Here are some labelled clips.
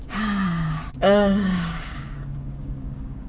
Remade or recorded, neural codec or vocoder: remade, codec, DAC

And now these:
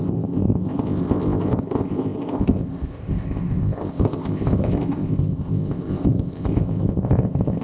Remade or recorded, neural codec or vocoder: remade, codec, ZipCodec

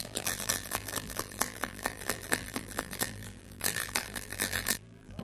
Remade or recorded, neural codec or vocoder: remade, vocoder, BigVGAN v2